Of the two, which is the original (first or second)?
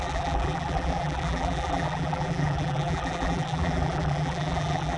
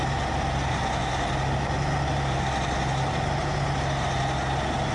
second